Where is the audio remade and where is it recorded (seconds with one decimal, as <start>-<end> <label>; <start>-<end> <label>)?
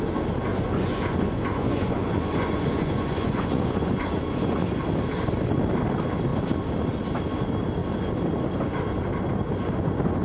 0.0-0.5 recorded; 0.5-4.8 remade; 4.8-10.2 recorded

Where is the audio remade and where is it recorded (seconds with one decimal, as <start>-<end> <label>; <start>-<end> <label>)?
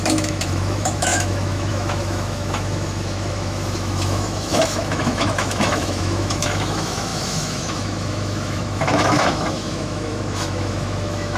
0.0-11.4 remade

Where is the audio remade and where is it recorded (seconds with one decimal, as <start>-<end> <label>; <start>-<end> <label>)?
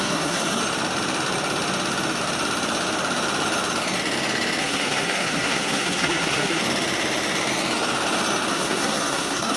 0.0-0.6 remade; 0.6-4.6 recorded; 4.6-6.6 remade; 6.6-8.5 recorded; 8.5-9.6 remade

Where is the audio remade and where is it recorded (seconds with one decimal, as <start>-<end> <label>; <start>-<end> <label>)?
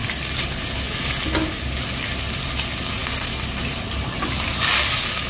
0.0-5.3 recorded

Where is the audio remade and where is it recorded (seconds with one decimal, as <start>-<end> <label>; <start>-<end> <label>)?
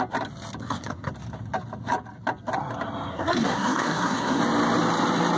0.0-0.6 recorded; 0.6-1.1 remade; 1.1-3.1 recorded; 3.1-4.4 remade; 4.4-5.4 recorded